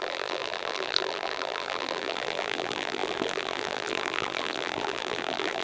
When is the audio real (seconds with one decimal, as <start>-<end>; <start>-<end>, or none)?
none